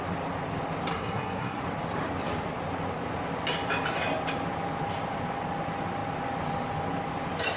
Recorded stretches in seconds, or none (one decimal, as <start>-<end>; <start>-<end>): 0.0-0.9; 1.6-7.6